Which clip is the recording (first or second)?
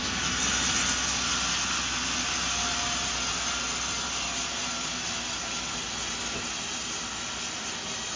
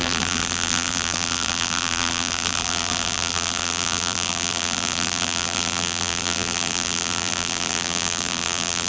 first